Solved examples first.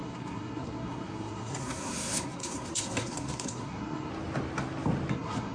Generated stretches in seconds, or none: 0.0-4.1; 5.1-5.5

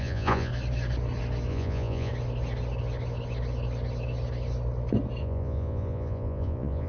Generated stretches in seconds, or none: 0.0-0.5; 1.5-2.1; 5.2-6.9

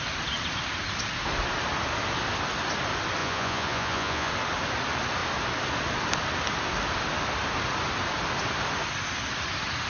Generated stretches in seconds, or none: 3.2-4.3